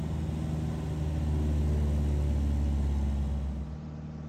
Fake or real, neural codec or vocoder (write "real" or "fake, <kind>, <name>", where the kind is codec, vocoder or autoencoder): real